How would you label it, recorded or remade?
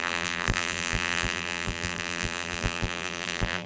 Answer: remade